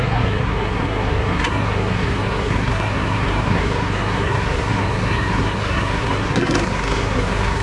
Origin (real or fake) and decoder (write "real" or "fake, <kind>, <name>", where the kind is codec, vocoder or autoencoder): fake, codec, SNAC